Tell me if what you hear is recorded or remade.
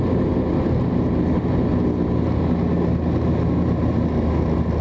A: recorded